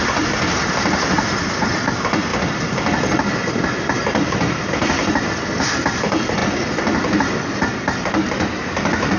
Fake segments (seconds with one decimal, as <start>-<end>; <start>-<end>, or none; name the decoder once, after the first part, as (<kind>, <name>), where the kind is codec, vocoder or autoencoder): none